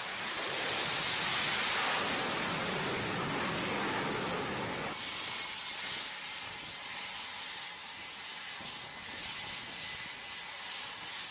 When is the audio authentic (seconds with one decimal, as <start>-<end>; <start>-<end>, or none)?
0.0-11.3

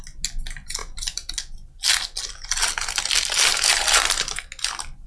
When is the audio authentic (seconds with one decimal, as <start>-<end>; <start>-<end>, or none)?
0.0-0.8; 1.3-3.5; 4.4-5.1